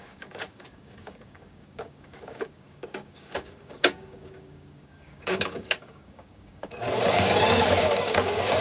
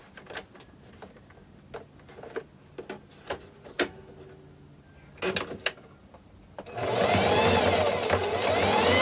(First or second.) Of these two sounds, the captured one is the second